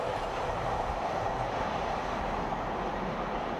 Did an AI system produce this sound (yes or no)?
no